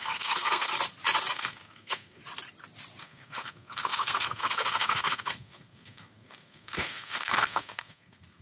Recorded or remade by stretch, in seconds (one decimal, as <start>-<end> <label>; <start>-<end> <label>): 0.0-0.7 remade; 0.7-1.3 recorded; 1.3-2.2 remade; 2.2-3.0 recorded; 3.0-8.4 remade